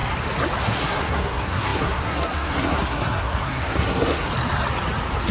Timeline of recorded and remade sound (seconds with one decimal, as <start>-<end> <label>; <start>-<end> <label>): 0.0-0.6 recorded; 0.6-4.3 remade; 4.3-5.3 recorded